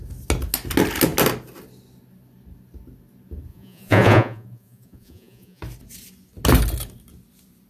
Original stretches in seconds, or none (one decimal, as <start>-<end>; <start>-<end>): 0.0-3.5; 5.6-7.7